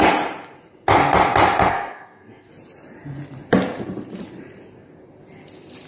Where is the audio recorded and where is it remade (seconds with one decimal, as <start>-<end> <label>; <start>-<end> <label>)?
0.0-1.7 recorded; 1.7-2.5 remade; 2.5-5.9 recorded